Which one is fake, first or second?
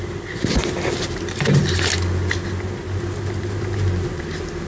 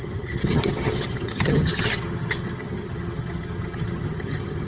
second